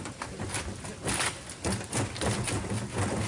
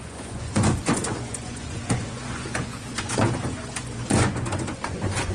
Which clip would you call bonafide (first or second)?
first